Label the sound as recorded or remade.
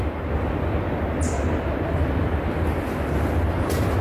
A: recorded